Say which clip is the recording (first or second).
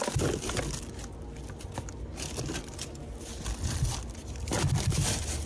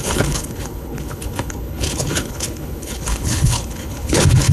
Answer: first